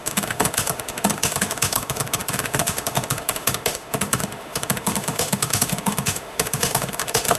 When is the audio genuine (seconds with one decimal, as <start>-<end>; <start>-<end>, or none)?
none